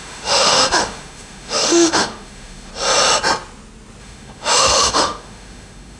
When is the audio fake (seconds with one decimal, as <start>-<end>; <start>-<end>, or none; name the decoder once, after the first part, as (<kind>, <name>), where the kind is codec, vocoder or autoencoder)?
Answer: 0.0-2.7 (autoencoder, DAC-VAE); 4.0-6.0